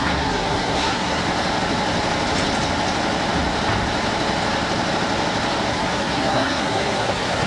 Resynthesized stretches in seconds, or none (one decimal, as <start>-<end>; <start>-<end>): 0.0-1.2; 5.7-7.5